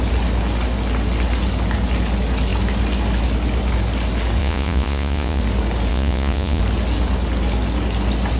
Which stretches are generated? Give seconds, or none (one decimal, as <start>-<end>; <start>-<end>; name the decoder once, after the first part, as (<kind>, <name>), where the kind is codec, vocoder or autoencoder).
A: 4.4-5.4 (vocoder, Vocos); 5.9-6.6